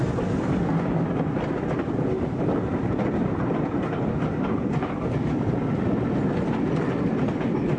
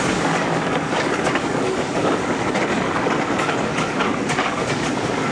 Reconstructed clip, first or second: second